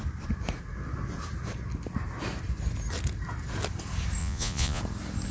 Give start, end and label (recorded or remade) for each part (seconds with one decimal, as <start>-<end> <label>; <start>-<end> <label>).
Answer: 0.0-4.2 recorded; 4.2-4.8 remade; 4.8-5.3 recorded